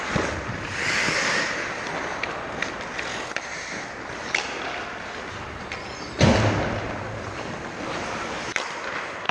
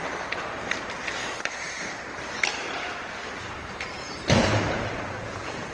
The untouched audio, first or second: first